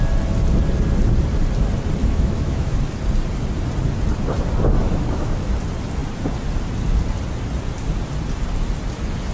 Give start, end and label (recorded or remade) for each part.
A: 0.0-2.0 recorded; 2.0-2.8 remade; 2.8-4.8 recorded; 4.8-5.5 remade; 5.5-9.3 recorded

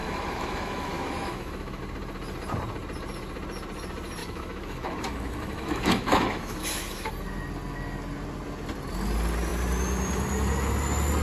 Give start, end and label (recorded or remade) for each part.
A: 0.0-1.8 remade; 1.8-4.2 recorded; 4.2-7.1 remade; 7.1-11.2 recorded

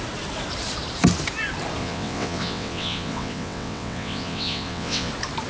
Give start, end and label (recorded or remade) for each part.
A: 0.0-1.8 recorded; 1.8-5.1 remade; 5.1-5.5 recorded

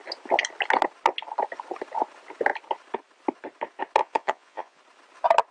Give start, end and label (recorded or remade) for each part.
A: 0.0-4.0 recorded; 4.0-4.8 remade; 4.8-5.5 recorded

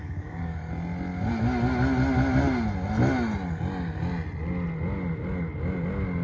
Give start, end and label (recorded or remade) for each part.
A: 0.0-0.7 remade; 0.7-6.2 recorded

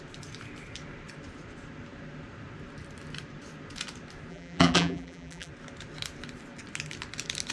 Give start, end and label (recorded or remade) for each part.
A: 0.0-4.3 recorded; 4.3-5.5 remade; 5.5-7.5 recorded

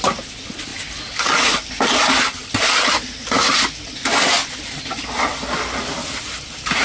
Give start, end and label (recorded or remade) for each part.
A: 0.0-6.8 recorded

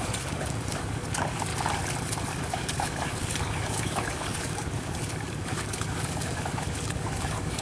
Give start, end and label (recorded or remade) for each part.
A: 0.0-1.5 remade; 1.5-2.3 recorded; 2.3-7.6 remade